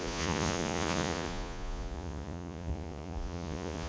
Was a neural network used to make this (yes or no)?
yes